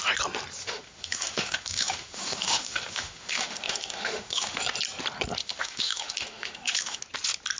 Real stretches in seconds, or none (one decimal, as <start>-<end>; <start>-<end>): 0.0-0.6; 4.6-5.4; 7.0-7.6